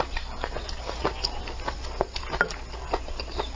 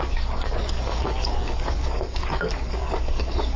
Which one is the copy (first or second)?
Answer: second